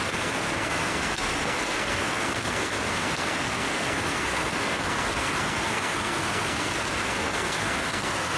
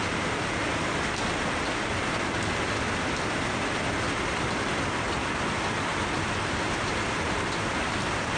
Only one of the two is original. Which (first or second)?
second